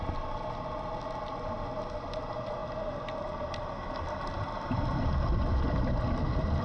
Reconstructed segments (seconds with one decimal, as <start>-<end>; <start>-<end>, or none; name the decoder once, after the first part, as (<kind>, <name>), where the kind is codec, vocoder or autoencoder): none